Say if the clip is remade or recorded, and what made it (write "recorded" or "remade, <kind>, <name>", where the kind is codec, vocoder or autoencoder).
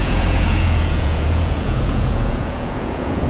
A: remade, vocoder, Vocos